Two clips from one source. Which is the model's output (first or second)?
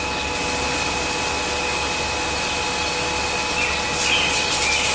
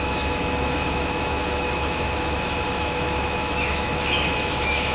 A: second